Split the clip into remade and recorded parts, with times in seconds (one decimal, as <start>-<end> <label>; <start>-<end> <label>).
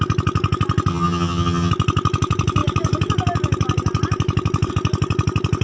0.0-0.9 recorded; 0.9-1.7 remade; 1.7-5.6 recorded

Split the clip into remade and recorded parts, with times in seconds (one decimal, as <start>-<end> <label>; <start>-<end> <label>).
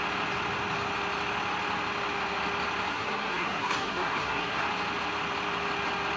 0.0-2.9 recorded; 2.9-4.6 remade; 4.6-6.2 recorded